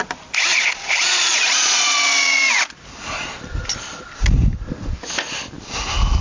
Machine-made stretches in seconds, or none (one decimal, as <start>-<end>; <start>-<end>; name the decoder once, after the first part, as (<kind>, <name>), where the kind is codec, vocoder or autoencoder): 0.5-2.5 (vocoder, Vocos)